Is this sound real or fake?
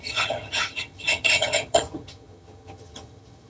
fake